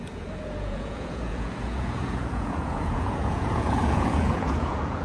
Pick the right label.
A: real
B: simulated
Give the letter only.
B